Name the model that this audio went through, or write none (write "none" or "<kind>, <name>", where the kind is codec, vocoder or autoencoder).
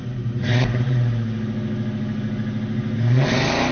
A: none